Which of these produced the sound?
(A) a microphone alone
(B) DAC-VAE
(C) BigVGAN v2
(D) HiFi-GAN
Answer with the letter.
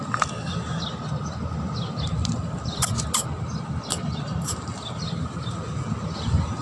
A